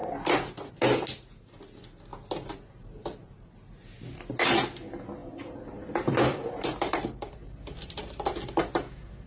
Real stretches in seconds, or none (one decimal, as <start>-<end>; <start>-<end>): 0.7-2.1; 3.5-5.2; 8.0-9.3